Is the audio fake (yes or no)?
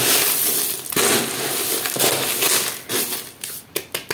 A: no